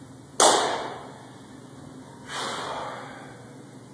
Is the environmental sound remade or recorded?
recorded